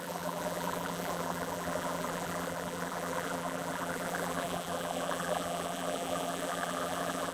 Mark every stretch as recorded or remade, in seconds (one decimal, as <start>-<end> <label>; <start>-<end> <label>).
0.0-7.3 remade